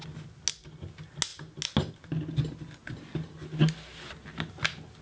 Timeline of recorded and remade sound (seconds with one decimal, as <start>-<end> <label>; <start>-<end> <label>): 0.0-5.0 recorded